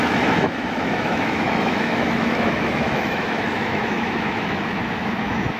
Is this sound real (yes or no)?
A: no